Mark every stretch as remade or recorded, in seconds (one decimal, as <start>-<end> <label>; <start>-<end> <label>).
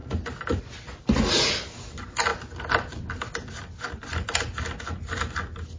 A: 0.0-0.6 remade; 0.6-2.3 recorded; 2.3-4.9 remade; 4.9-5.8 recorded